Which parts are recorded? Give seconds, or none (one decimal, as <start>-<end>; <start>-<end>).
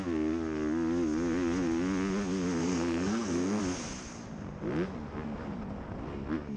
0.0-2.6; 3.6-6.6